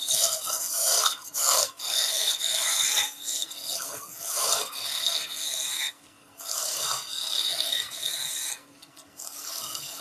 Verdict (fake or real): fake